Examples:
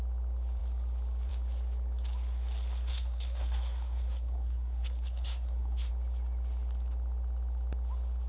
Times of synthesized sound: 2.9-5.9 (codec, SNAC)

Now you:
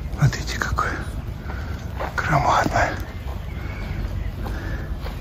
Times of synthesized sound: 0.5-2.9 (vocoder, BigVGAN v2); 3.3-4.0

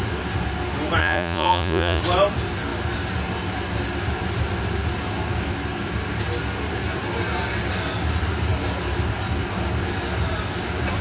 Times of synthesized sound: 1.0-2.0 (vocoder, Vocos)

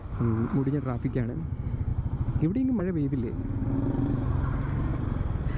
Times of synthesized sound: none